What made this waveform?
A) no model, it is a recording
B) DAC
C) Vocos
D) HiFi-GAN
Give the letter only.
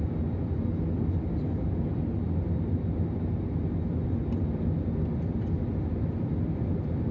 A